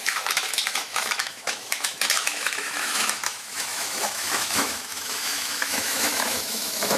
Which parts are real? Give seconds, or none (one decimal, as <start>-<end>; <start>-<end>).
none